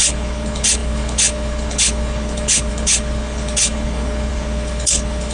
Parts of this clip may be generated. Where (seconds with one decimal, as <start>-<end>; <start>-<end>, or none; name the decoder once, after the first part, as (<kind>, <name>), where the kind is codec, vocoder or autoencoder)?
0.0-5.3 (codec, HILCodec)

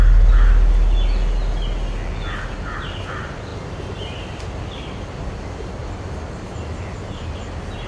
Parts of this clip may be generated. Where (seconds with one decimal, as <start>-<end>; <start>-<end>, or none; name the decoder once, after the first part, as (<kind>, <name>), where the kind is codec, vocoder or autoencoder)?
none

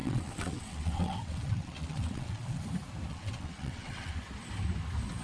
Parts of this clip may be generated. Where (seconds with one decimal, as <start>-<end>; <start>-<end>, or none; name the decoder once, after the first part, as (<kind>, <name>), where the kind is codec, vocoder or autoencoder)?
0.0-2.6 (vocoder, WaveNeXt); 3.1-4.2

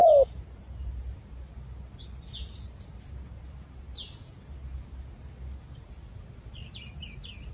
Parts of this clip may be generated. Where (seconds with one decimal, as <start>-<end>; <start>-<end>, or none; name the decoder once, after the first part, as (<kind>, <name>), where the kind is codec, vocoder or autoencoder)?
none